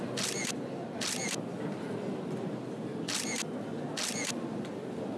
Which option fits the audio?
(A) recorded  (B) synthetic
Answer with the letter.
A